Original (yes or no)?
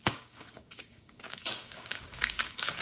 no